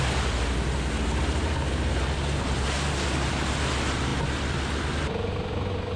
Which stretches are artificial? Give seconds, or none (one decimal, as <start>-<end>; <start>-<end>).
none